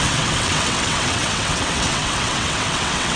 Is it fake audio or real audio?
fake